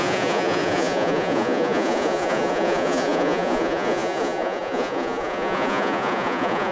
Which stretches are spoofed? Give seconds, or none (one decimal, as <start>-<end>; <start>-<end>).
0.0-6.7